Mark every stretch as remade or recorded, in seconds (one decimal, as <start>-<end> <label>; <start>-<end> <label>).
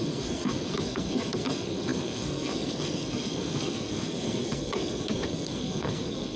0.0-6.4 remade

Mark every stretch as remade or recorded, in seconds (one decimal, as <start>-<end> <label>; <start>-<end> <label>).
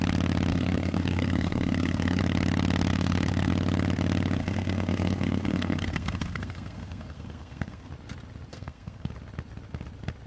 0.0-0.5 recorded; 0.5-2.2 remade; 2.2-2.9 recorded; 2.9-3.5 remade; 3.5-4.4 recorded; 4.4-7.9 remade; 7.9-8.5 recorded; 8.5-9.1 remade; 9.1-10.3 recorded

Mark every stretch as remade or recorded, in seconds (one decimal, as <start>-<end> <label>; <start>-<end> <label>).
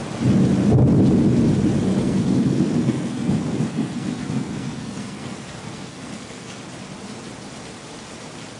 0.0-1.9 recorded; 1.9-6.6 remade; 6.6-8.6 recorded